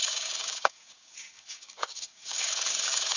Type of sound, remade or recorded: remade